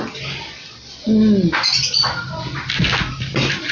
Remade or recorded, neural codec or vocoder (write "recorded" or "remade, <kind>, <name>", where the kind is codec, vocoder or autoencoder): recorded